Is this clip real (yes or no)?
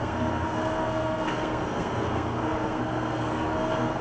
no